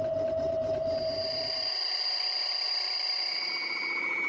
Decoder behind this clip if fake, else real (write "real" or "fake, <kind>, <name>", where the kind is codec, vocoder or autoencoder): fake, vocoder, BigVGAN v2